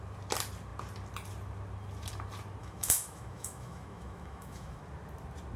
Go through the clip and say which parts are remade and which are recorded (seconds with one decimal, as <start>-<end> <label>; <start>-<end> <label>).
0.0-2.6 recorded; 2.6-4.8 remade; 4.8-5.6 recorded